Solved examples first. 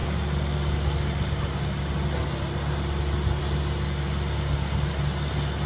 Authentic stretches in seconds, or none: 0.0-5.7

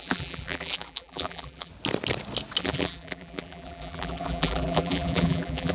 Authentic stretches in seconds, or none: 1.7-2.6

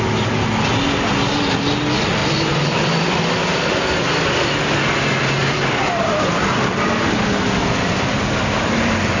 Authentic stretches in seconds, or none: 0.0-2.2; 4.0-5.4; 6.4-7.6

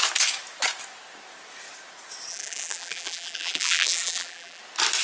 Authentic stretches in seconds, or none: 0.0-2.3; 4.6-5.0

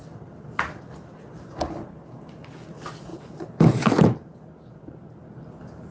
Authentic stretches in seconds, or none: 0.0-3.1; 3.9-5.9

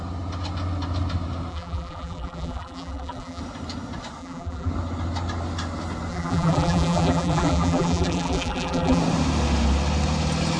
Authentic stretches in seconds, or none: 0.0-1.5; 3.4-4.2; 4.7-6.1; 9.0-10.6

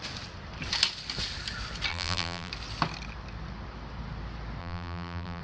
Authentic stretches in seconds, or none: 0.0-1.9; 2.5-4.6